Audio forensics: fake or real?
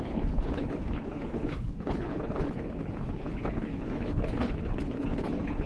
fake